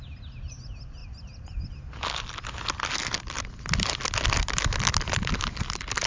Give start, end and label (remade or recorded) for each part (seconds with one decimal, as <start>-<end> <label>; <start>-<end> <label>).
0.0-6.1 recorded